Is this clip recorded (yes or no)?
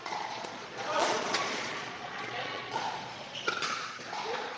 no